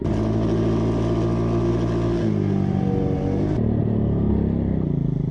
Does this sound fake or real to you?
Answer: real